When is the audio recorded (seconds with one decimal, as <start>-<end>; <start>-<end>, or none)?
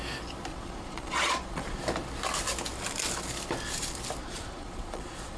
0.0-0.5; 1.8-4.2